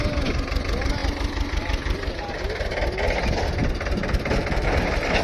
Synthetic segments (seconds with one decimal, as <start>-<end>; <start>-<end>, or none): none